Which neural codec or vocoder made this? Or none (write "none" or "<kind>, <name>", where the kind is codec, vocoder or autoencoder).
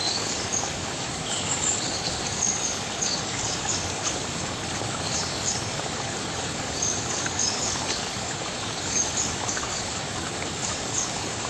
codec, DAC